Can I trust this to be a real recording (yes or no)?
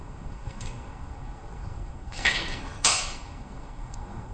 no